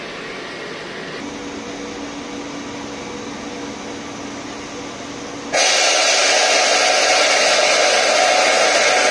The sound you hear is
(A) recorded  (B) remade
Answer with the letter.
A